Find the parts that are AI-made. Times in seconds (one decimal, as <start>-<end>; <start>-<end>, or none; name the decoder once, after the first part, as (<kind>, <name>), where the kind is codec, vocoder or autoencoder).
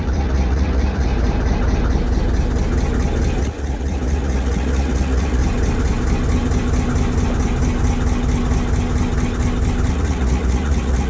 0.0-1.1 (vocoder, Vocos); 3.4-5.4; 9.9-11.1